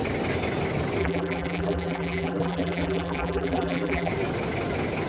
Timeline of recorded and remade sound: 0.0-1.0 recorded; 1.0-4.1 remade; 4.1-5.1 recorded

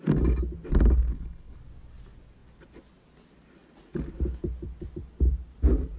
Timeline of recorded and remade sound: 0.0-1.1 recorded; 1.1-1.6 remade; 1.6-6.0 recorded

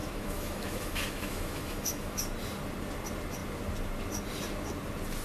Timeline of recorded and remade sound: 0.0-2.2 remade; 2.2-5.2 recorded

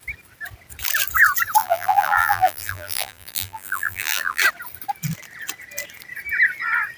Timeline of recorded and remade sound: 0.0-1.6 recorded; 1.6-4.4 remade; 4.4-7.0 recorded

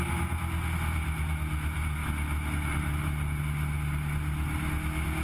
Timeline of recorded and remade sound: 0.0-5.2 recorded